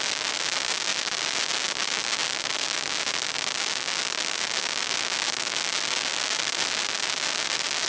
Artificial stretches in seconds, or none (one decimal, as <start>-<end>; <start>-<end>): none

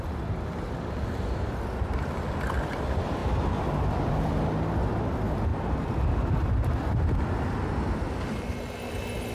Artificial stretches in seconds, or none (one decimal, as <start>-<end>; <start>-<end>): none

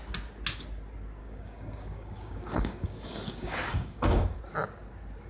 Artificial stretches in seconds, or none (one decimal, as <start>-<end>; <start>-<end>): 1.2-4.4